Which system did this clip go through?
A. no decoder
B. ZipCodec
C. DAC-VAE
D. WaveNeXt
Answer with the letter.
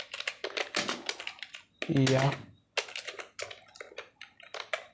A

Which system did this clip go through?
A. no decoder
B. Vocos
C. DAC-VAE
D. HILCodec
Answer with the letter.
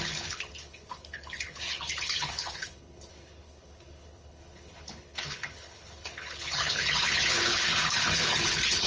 D